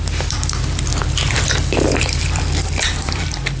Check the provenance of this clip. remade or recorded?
remade